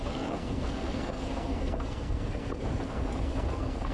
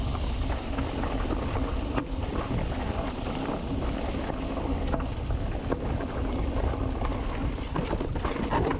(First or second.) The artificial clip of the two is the first